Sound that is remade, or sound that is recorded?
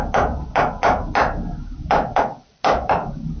recorded